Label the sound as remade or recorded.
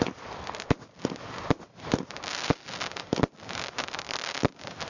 recorded